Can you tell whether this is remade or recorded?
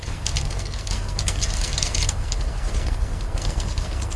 remade